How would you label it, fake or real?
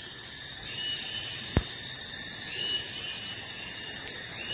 real